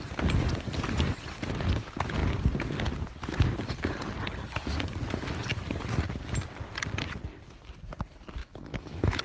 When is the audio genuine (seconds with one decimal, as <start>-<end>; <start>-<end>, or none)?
0.0-8.4